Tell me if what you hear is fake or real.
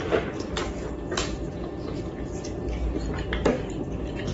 real